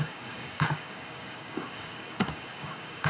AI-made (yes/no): yes